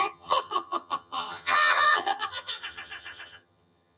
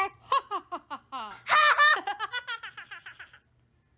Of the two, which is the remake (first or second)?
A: first